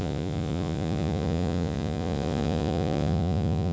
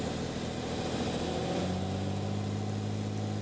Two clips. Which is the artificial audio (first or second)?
first